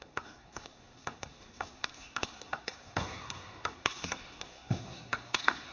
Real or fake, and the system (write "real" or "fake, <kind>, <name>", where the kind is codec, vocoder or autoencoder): fake, codec, SNAC